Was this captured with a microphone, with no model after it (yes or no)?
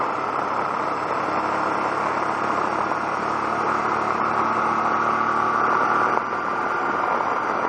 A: yes